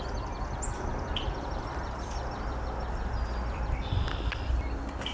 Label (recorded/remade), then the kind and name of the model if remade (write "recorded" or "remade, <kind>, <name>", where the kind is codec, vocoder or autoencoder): recorded